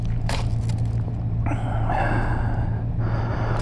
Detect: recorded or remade recorded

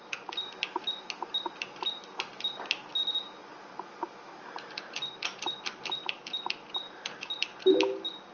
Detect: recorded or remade recorded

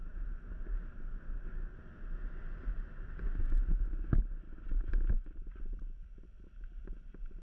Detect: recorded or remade recorded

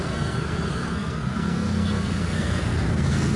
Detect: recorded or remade remade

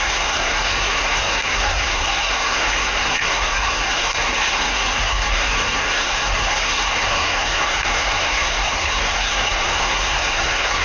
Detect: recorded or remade remade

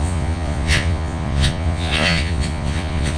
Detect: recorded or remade remade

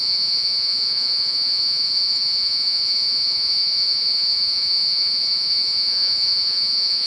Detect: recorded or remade remade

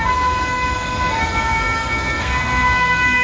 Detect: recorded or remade remade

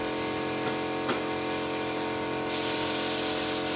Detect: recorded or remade recorded